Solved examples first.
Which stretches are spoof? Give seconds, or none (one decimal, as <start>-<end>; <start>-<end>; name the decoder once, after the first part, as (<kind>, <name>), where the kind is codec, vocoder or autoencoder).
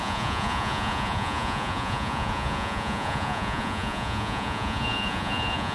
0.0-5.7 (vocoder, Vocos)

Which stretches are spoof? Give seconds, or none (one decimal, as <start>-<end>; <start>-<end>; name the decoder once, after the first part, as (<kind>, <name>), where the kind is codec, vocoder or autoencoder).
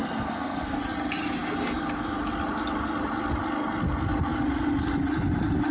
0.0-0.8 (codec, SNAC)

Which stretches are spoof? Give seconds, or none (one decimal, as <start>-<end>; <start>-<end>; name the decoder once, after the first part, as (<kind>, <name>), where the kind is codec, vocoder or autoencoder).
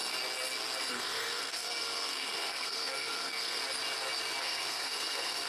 0.9-3.6 (codec, SNAC); 4.4-5.5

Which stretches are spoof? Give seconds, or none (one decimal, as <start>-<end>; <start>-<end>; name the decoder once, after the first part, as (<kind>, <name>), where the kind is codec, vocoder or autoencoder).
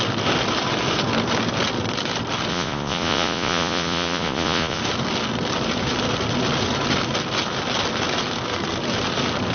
2.5-4.8 (vocoder, Vocos)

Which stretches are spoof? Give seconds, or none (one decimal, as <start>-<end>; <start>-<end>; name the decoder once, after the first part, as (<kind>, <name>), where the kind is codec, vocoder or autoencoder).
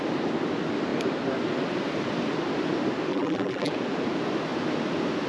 3.1-3.7 (vocoder, BigVGAN v2)